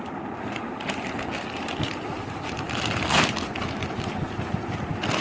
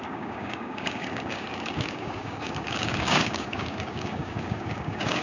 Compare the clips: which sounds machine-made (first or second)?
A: second